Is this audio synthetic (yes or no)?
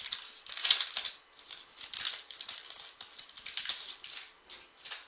no